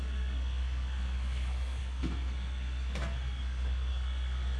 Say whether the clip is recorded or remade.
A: remade